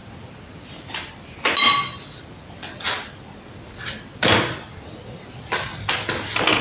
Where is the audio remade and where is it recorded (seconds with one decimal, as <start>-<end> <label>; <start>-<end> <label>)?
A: 0.0-6.6 recorded